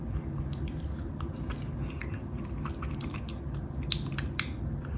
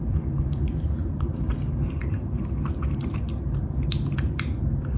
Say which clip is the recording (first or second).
first